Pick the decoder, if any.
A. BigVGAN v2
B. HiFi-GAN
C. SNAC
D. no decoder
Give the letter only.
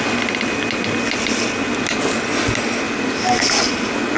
D